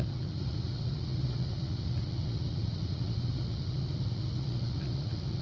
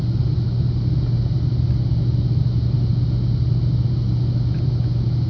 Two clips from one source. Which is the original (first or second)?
second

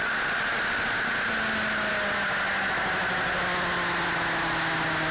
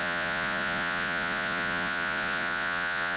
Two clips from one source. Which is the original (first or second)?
first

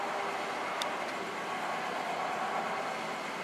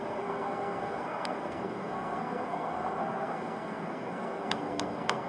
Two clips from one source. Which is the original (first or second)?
first